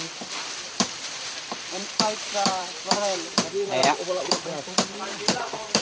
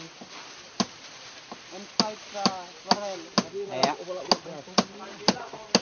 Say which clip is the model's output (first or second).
first